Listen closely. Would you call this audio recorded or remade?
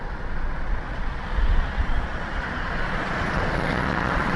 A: remade